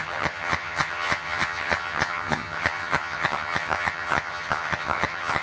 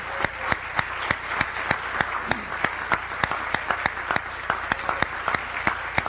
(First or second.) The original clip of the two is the second